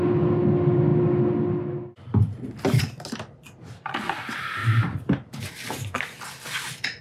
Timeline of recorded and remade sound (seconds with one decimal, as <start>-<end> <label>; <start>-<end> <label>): 0.0-7.0 recorded